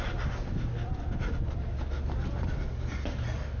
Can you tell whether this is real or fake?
real